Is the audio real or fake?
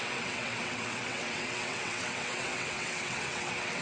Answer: fake